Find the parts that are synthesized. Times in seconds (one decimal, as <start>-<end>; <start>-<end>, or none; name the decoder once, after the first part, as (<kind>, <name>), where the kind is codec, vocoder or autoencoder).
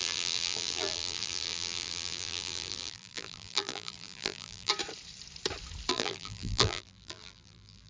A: 0.0-4.7 (vocoder, BigVGAN v2); 5.9-7.9